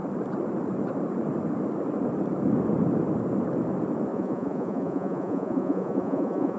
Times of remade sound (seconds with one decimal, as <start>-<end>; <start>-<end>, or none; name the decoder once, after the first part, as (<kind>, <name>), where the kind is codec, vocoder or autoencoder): 4.1-6.6 (vocoder, Vocos)